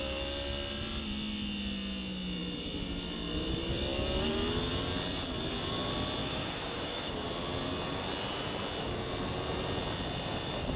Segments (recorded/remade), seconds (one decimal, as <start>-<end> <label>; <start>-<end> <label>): 0.0-6.2 recorded; 6.2-7.1 remade; 7.1-10.8 recorded